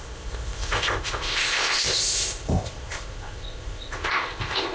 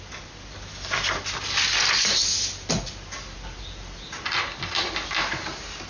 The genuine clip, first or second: second